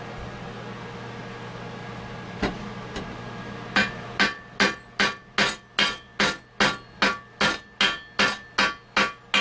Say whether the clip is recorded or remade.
recorded